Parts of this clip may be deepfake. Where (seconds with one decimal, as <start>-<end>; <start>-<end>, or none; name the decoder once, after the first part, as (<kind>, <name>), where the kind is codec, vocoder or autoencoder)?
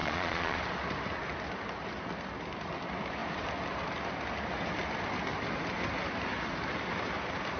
0.0-0.6 (vocoder, Vocos)